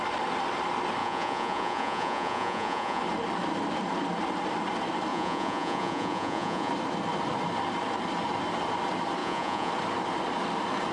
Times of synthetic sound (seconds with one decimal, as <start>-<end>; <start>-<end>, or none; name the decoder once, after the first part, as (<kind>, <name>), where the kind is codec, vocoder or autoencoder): 1.0-3.0 (vocoder, Vocos); 5.1-6.7; 9.2-9.7